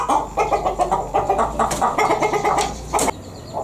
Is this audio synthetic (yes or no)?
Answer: no